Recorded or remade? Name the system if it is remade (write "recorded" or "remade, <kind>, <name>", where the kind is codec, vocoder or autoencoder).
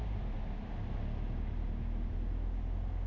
recorded